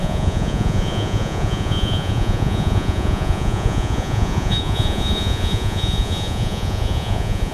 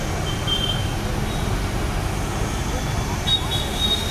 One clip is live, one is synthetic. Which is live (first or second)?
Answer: second